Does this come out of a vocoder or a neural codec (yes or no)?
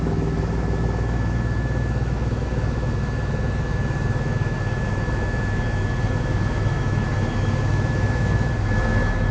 yes